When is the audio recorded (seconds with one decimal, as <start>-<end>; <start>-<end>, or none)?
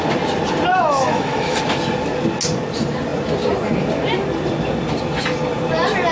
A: 0.0-0.7; 1.6-6.1